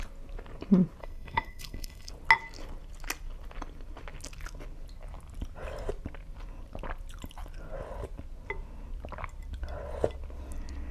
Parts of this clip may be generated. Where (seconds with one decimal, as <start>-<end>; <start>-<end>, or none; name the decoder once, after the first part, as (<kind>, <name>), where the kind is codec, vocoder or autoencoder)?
1.0-2.1 (codec, SNAC)